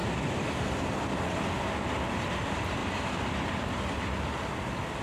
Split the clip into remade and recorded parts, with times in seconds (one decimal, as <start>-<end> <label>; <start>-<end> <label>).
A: 0.0-5.0 recorded